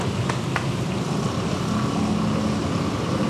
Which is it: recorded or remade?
recorded